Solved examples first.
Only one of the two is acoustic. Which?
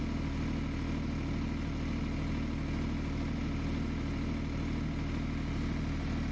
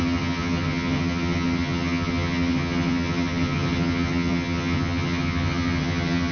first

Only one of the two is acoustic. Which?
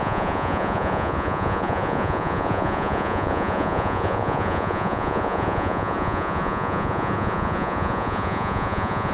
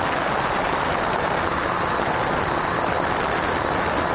second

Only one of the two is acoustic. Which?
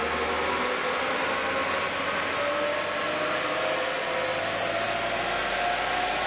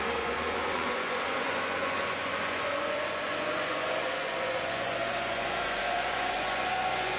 first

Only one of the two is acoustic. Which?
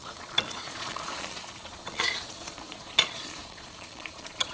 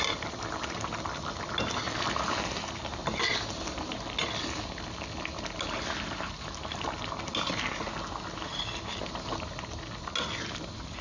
second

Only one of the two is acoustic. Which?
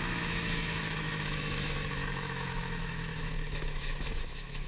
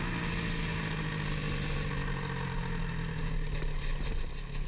second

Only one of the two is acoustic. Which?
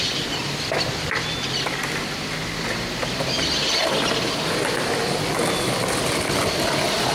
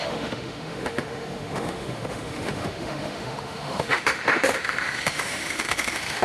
first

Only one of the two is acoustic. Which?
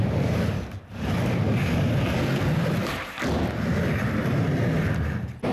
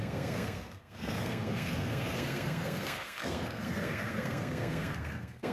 first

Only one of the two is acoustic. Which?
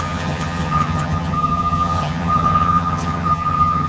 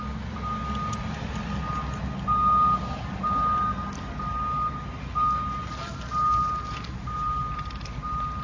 second